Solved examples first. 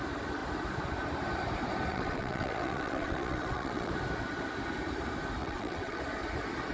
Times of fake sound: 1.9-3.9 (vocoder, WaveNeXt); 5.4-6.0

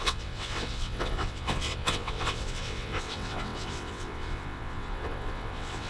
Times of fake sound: 0.0-5.9 (vocoder, WaveNeXt)

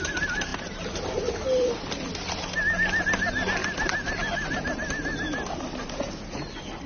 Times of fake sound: none

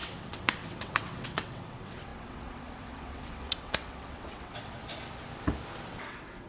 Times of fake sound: 0.0-4.8 (vocoder, WaveNeXt); 5.9-6.5

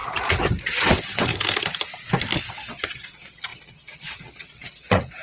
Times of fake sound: 0.6-1.3 (vocoder, WaveNeXt); 2.5-5.2

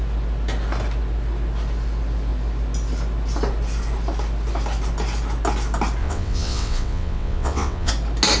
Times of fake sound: 6.0-7.9 (vocoder, WaveNeXt)